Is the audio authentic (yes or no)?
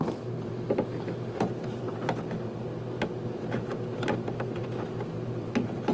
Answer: yes